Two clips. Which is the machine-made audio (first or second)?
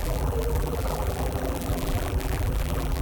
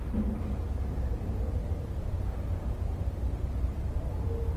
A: first